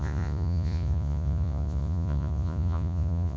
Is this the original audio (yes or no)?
no